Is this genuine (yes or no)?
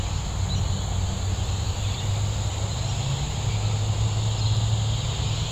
yes